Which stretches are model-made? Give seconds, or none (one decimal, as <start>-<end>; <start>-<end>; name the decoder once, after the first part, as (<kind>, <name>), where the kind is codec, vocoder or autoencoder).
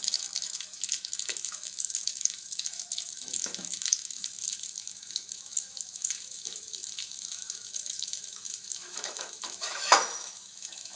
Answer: 0.0-11.0 (autoencoder, DAC-VAE)